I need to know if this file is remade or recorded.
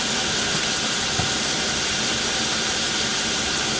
recorded